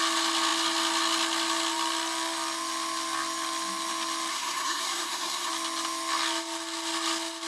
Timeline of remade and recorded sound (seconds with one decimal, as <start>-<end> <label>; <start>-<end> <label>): 0.0-4.3 recorded; 4.3-5.5 remade; 5.5-7.5 recorded